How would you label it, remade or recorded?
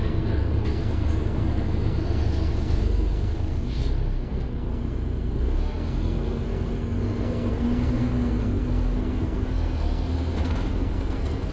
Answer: remade